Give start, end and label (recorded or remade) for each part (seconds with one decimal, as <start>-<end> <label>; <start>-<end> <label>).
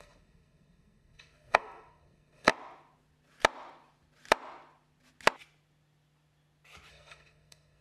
0.0-2.5 remade; 2.5-6.9 recorded; 6.9-7.8 remade